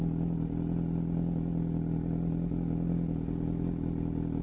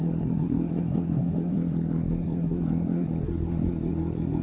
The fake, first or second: second